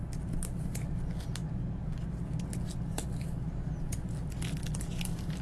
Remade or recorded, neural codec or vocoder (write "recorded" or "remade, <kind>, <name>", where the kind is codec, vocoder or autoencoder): recorded